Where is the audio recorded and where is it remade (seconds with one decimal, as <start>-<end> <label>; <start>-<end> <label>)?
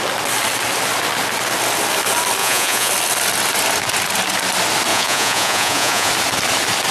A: 0.0-2.4 recorded; 2.4-2.9 remade; 2.9-4.9 recorded; 4.9-6.1 remade; 6.1-6.9 recorded